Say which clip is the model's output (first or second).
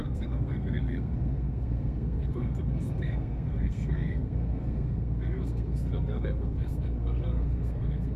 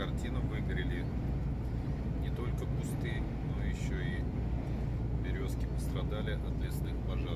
first